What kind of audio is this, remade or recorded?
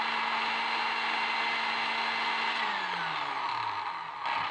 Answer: recorded